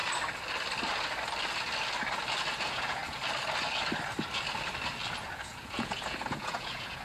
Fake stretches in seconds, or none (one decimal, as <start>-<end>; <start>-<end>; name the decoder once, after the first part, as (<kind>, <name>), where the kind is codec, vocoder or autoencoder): 2.6-3.0 (vocoder, Vocos); 5.2-7.0